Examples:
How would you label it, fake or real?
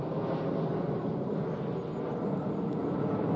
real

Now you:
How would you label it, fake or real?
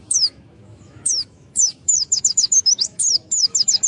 fake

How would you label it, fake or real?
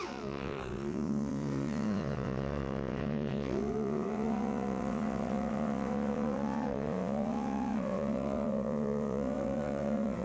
fake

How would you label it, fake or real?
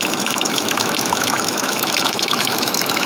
fake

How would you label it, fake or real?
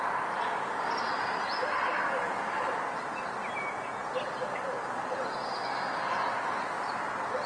real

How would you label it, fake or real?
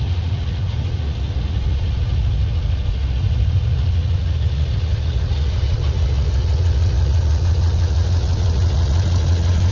fake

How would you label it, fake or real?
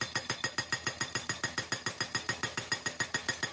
real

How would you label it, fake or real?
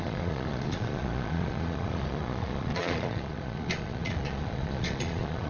fake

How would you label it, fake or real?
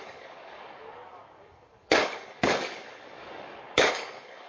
fake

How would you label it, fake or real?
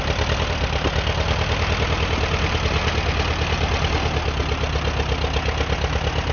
real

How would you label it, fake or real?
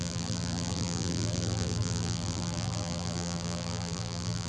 fake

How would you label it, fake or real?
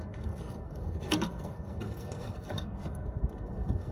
fake